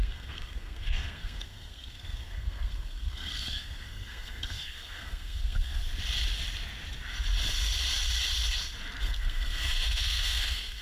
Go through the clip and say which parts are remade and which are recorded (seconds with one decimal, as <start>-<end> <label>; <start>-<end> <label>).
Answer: 0.0-5.8 remade; 5.8-9.0 recorded; 9.0-10.8 remade